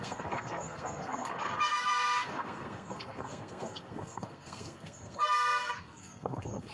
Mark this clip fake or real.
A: fake